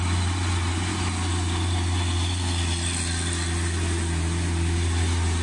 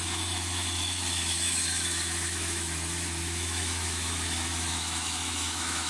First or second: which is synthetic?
second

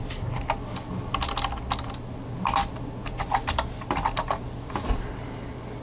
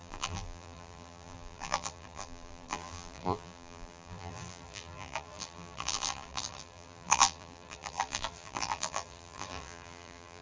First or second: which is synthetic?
second